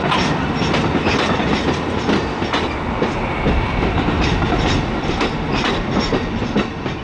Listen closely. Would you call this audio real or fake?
real